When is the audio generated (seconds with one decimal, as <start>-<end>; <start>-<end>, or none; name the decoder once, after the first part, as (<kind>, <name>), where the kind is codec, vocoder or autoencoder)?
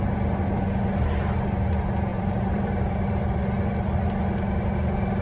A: 2.1-3.2 (vocoder, BigVGAN v2)